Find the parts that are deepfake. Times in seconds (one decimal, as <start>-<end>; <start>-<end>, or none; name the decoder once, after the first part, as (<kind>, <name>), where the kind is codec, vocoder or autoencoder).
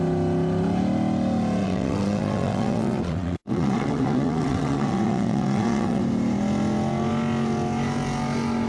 1.6-6.0 (vocoder, WaveNeXt)